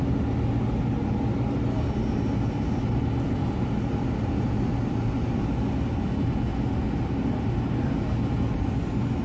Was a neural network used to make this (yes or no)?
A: no